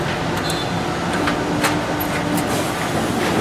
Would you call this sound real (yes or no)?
yes